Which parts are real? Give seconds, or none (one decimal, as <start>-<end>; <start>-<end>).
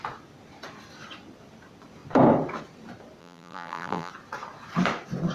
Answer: 0.0-3.2; 4.1-5.3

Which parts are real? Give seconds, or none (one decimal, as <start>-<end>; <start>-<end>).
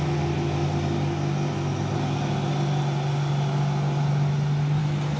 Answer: 0.0-5.2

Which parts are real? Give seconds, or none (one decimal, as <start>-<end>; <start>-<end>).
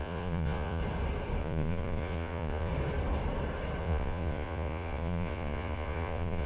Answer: 0.8-1.4; 2.7-3.8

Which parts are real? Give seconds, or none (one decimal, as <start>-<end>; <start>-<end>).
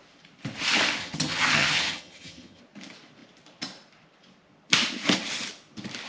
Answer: 0.0-1.0; 2.6-6.1